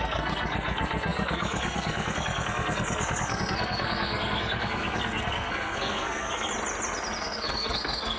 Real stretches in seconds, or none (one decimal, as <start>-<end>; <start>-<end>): 6.5-7.2